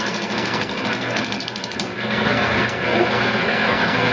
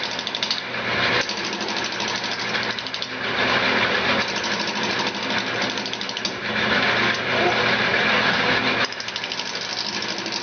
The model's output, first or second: first